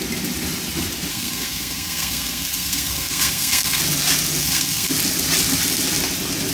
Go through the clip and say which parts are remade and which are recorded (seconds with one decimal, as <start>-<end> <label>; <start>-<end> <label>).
0.0-1.1 recorded; 1.1-3.8 remade; 3.8-4.4 recorded; 4.4-4.9 remade; 4.9-6.5 recorded